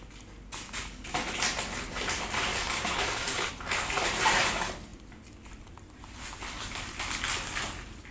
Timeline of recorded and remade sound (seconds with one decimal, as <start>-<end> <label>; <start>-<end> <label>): 0.0-2.5 recorded; 2.5-3.5 remade; 3.5-8.1 recorded